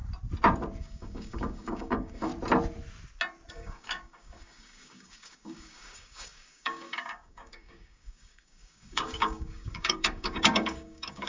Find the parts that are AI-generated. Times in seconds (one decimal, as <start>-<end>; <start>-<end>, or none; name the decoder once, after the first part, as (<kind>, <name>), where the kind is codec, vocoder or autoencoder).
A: 0.8-2.3 (codec, DAC); 3.5-11.3